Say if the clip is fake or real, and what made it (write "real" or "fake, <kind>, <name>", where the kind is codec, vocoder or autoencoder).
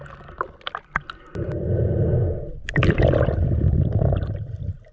real